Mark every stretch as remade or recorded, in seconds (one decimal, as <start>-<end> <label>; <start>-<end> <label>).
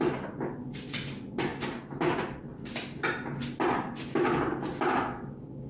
0.0-5.7 recorded